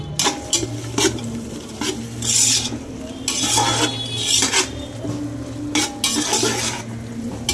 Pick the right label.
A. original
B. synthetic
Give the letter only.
A